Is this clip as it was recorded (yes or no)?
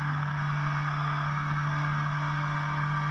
no